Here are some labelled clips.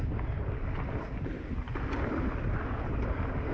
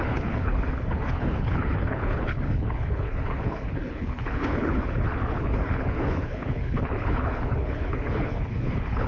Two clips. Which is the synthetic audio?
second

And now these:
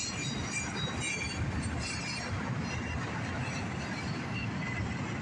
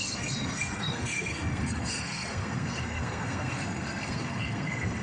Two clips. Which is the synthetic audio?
second